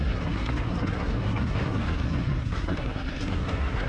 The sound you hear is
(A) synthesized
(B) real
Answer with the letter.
A